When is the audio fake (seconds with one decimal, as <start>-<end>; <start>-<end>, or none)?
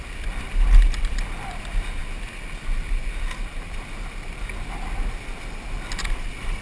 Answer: none